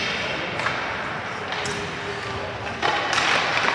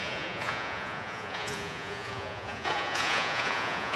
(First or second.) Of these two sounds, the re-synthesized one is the second